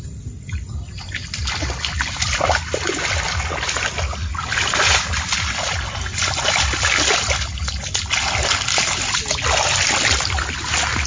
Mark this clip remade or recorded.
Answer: recorded